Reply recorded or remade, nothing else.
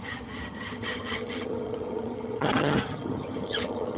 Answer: remade